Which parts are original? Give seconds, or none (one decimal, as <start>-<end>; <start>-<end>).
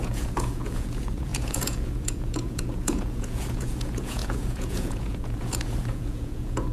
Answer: none